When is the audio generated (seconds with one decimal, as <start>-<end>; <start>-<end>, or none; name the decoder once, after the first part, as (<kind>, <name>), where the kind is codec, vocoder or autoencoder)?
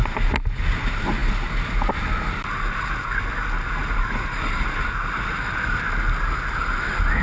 none